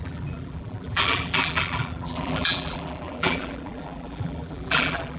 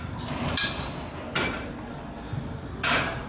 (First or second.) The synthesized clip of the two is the first